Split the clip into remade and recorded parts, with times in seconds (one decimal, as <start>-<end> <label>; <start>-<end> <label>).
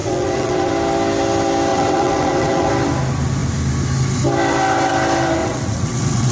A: 0.0-0.7 remade; 0.7-1.7 recorded; 1.7-2.7 remade; 2.7-5.4 recorded; 5.4-6.3 remade